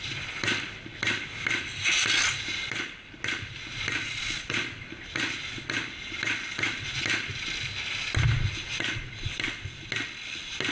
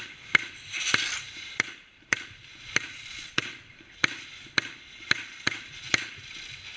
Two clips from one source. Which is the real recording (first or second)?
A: first